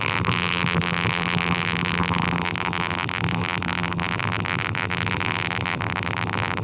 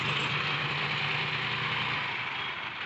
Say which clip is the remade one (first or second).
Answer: first